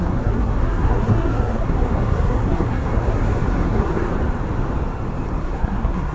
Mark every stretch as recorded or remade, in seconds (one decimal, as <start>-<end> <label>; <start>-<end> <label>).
0.0-4.1 remade; 4.1-5.4 recorded; 5.4-6.1 remade